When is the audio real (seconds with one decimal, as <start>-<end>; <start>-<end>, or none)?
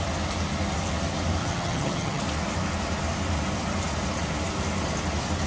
0.0-1.4; 2.2-5.5